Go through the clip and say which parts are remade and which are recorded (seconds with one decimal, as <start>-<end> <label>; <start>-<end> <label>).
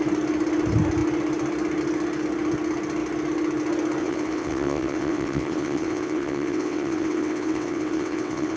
0.0-4.0 recorded; 4.0-8.6 remade